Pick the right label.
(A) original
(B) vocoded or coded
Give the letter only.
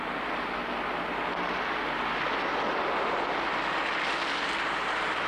A